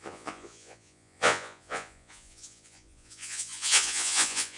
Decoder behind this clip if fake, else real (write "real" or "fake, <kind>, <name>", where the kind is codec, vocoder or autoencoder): fake, vocoder, Vocos